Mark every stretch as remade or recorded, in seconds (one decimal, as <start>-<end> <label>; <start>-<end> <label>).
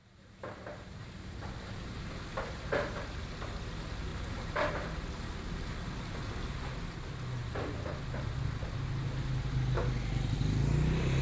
0.0-2.1 remade; 2.1-4.1 recorded; 4.1-4.7 remade; 4.7-11.2 recorded